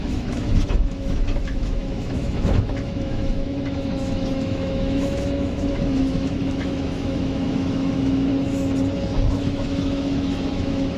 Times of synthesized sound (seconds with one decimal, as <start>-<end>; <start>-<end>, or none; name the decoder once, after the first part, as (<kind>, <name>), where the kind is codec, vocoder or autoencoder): 0.0-8.3 (autoencoder, DAC-VAE); 9.3-11.0